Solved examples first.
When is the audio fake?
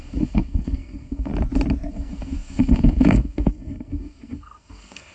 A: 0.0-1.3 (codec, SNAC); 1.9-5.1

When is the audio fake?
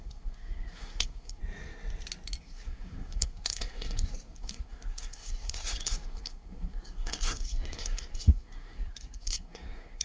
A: 0.0-1.4 (codec, SNAC); 2.4-10.0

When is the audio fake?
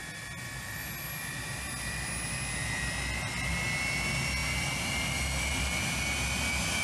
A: none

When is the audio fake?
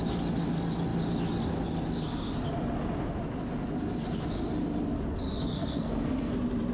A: 5.5-6.3 (codec, SNAC)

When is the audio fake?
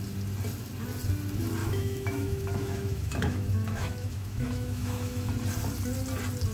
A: 1.6-5.3 (autoencoder, DAC-VAE)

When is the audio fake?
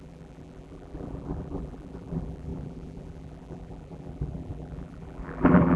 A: 0.0-5.8 (vocoder, BigVGAN v2)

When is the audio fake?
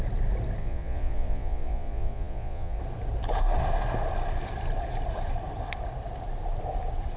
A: 0.6-2.8 (vocoder, Vocos)